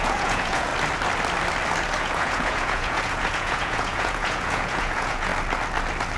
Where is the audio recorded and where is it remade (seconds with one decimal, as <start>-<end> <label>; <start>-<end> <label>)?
0.0-0.7 remade; 0.7-2.0 recorded; 2.0-5.3 remade; 5.3-6.2 recorded